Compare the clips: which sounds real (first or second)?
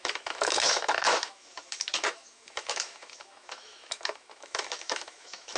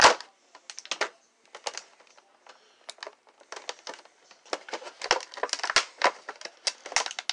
second